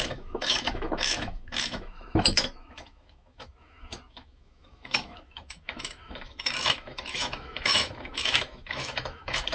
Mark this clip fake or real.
fake